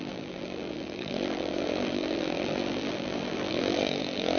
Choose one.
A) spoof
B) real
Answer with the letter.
A